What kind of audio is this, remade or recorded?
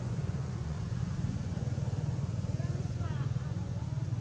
remade